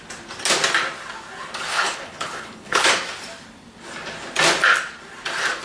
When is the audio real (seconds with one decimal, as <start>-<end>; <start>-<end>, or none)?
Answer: 0.0-1.7; 2.9-5.6